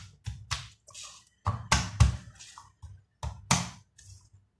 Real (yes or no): yes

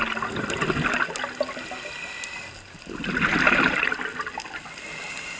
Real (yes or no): yes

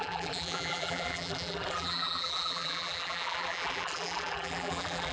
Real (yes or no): no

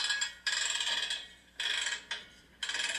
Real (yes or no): yes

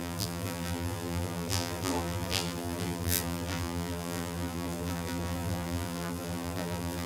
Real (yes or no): no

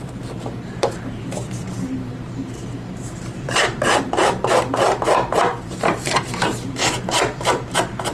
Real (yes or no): no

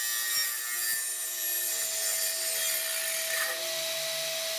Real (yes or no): yes